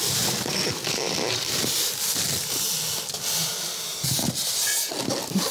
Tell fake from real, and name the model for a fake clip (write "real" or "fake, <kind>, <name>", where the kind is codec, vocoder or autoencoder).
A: real